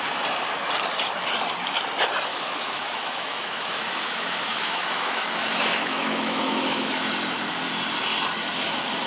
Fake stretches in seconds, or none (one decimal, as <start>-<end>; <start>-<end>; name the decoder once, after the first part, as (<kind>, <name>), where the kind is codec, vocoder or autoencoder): 2.3-6.9 (autoencoder, DAC-VAE)